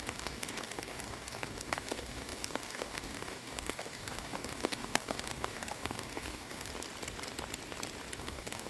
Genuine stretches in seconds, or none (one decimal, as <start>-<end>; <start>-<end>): 6.7-8.2